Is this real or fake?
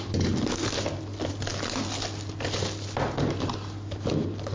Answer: real